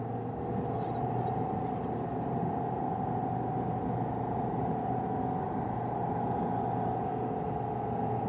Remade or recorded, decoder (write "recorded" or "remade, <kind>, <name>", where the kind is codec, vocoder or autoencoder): recorded